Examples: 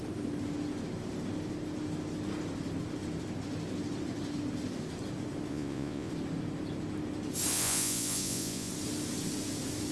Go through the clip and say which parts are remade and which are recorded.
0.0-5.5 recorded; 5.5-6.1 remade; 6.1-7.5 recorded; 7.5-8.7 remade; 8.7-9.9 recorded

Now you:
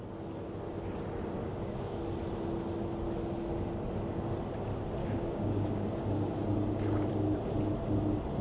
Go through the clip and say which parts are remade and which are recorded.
0.0-1.4 recorded; 1.4-2.0 remade; 2.0-5.0 recorded; 5.0-5.9 remade; 5.9-8.4 recorded

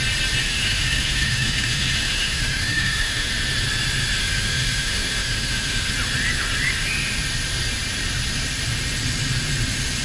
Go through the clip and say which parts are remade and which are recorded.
0.0-0.4 recorded; 0.4-3.3 remade; 3.3-4.2 recorded; 4.2-5.9 remade; 5.9-10.0 recorded

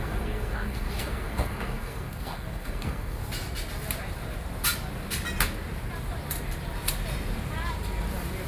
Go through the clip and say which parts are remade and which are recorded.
0.0-3.2 remade; 3.2-8.5 recorded

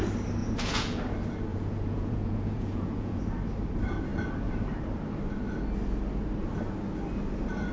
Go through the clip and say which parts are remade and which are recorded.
0.0-0.4 recorded; 0.4-1.0 remade; 1.0-1.5 recorded; 1.5-3.2 remade; 3.2-7.7 recorded

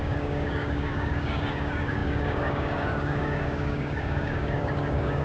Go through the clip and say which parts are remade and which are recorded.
0.0-5.2 remade